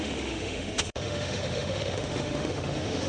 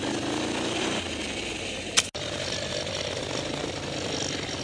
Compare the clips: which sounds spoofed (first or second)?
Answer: first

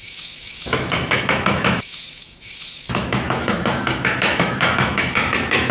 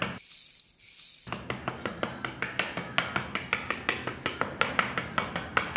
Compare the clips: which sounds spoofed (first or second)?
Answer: first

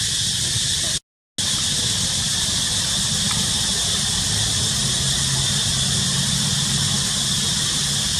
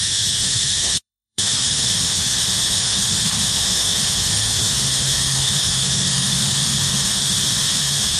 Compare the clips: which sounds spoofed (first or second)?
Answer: second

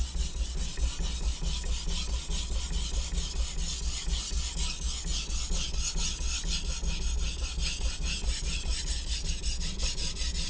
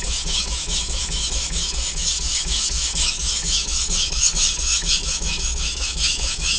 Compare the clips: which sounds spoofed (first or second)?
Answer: second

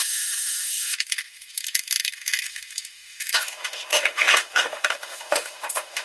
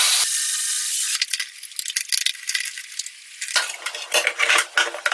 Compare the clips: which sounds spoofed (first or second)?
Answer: first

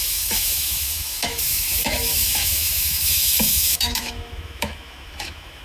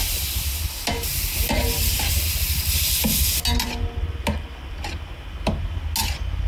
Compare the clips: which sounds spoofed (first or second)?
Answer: first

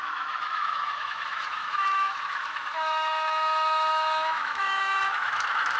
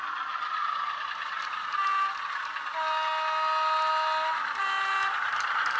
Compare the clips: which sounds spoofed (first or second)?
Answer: first